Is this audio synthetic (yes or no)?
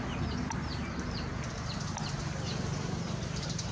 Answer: no